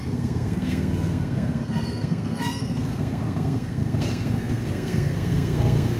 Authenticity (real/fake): fake